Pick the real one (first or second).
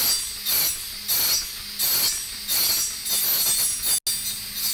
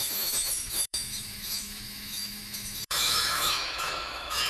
first